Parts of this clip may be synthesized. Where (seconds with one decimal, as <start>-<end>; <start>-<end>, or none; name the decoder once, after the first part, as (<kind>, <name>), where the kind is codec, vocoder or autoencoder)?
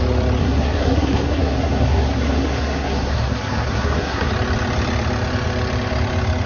0.4-4.3 (codec, SNAC)